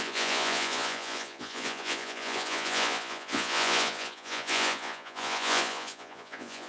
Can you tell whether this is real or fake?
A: fake